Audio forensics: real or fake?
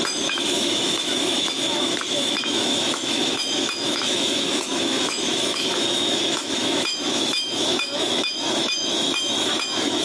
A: fake